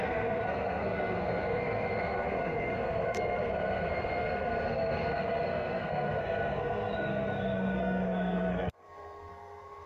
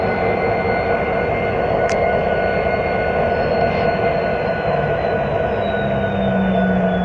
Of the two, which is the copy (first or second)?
first